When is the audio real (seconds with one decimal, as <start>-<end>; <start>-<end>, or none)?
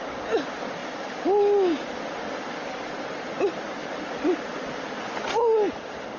0.0-6.2